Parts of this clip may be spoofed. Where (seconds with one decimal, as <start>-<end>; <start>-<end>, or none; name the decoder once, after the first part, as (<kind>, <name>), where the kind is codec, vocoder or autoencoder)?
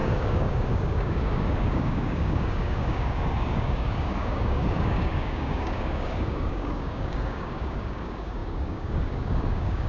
0.0-9.9 (codec, DAC)